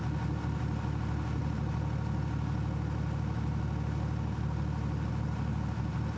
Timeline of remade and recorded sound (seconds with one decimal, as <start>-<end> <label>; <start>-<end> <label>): 0.0-6.2 recorded